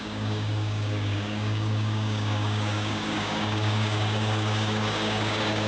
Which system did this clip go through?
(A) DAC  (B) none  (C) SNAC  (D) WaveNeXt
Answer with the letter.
A